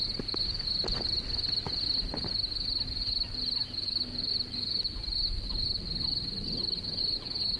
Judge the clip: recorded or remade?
recorded